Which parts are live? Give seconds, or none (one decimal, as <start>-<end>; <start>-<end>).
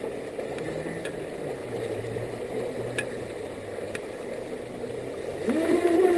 0.0-1.6; 2.7-6.2